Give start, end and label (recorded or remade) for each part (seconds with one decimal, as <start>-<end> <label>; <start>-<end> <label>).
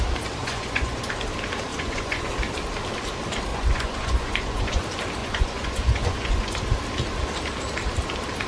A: 0.0-0.4 recorded; 0.4-1.1 remade; 1.1-1.7 recorded; 1.7-2.3 remade; 2.3-3.5 recorded; 3.5-4.8 remade; 4.8-5.2 recorded; 5.2-6.6 remade; 6.6-8.5 recorded